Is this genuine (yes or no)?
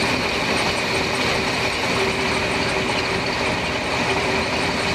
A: yes